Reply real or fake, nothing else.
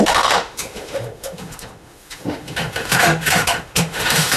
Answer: fake